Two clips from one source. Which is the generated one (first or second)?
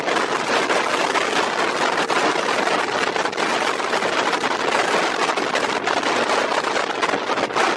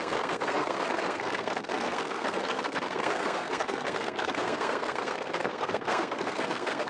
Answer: second